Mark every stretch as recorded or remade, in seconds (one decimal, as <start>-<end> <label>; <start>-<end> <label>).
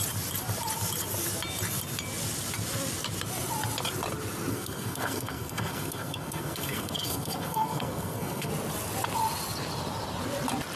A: 0.0-4.5 recorded; 4.5-8.5 remade; 8.5-10.8 recorded